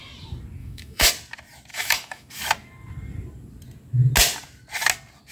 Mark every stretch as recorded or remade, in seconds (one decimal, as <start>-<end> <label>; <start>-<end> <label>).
0.0-0.6 recorded; 0.6-1.1 remade; 1.1-1.7 recorded; 1.7-2.3 remade; 2.3-5.3 recorded